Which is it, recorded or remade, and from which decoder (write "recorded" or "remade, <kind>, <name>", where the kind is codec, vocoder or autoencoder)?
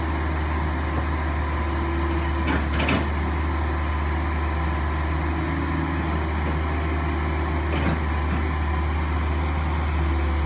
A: recorded